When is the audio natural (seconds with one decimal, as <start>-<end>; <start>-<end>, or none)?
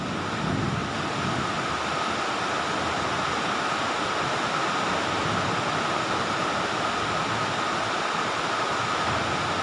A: 0.0-9.6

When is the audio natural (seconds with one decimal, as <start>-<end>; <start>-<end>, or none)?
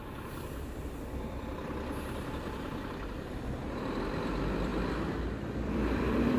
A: 4.7-5.6